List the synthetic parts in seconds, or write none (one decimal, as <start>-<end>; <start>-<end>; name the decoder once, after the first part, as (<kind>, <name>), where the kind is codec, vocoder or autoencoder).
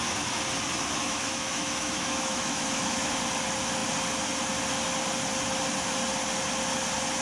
1.0-3.2 (autoencoder, DAC-VAE)